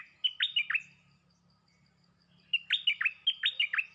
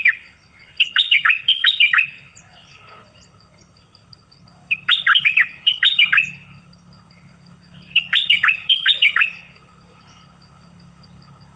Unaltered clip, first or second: first